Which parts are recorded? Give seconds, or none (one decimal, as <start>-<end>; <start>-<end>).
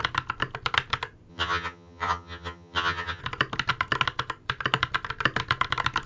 0.0-1.3; 3.2-6.1